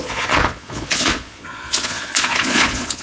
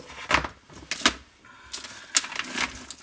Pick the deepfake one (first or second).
first